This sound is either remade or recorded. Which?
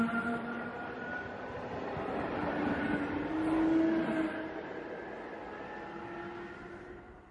recorded